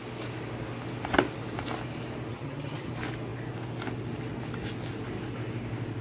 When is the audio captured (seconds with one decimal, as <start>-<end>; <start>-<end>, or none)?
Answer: 0.0-2.3; 2.9-6.0